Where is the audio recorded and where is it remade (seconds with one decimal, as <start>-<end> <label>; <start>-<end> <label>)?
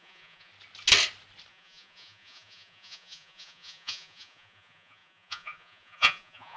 0.0-0.5 remade; 0.5-1.5 recorded; 1.5-6.6 remade